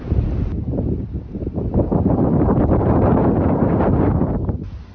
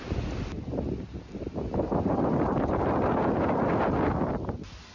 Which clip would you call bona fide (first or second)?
second